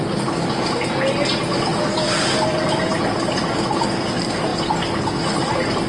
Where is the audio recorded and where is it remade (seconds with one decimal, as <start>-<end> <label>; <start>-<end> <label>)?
0.0-1.7 recorded; 1.7-3.0 remade; 3.0-5.9 recorded

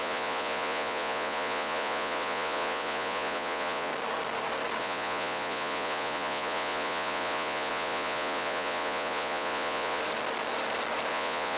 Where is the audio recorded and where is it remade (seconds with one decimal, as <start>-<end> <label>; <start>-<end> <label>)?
0.0-3.9 remade; 3.9-4.8 recorded; 4.8-10.0 remade; 10.0-11.1 recorded; 11.1-11.6 remade

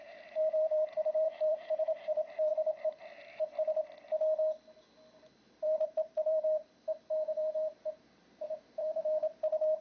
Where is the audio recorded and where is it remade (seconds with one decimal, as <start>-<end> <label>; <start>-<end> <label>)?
0.0-2.5 remade; 2.5-5.1 recorded; 5.1-9.8 remade

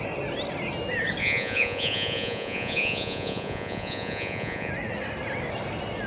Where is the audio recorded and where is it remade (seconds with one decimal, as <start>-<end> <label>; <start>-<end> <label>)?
0.0-1.2 recorded; 1.2-4.7 remade; 4.7-6.1 recorded